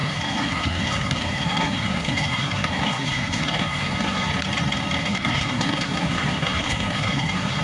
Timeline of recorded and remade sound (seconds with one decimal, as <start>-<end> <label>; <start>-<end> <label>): 0.0-4.3 remade; 4.3-5.0 recorded; 5.0-7.6 remade